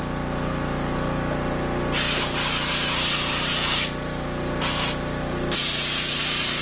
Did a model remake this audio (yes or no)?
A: no